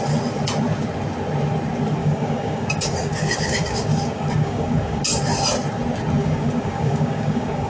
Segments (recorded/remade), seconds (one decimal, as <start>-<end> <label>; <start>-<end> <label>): 0.0-2.0 recorded; 2.0-5.0 remade; 5.0-6.2 recorded; 6.2-7.7 remade